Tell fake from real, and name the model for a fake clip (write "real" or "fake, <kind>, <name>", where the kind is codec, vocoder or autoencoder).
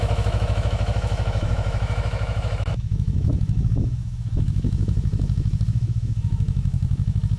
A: fake, autoencoder, DAC-VAE